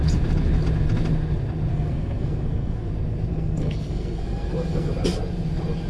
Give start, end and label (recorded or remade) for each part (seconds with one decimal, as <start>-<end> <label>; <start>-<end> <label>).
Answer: 0.0-1.7 recorded; 1.7-2.9 remade; 2.9-3.3 recorded; 3.3-4.9 remade; 4.9-5.9 recorded